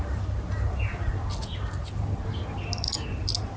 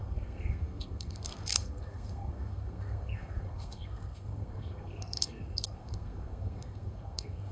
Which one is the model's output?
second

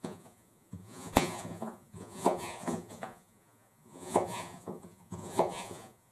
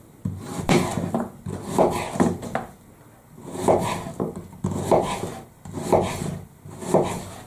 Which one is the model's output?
first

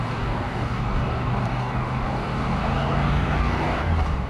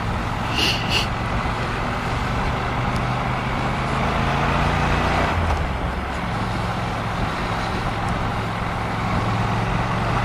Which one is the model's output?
first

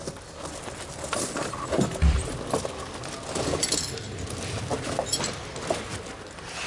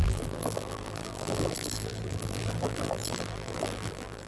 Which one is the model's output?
second